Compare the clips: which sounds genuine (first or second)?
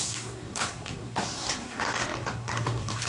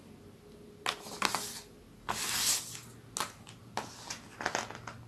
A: second